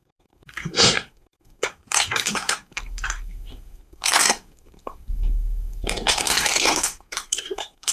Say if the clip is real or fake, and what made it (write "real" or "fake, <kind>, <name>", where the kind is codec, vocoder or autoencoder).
fake, codec, SNAC